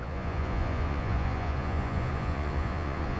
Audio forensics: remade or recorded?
remade